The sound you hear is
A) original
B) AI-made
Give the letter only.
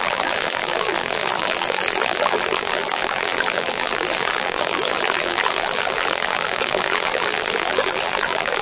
B